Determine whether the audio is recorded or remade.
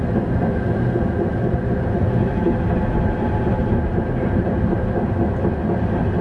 recorded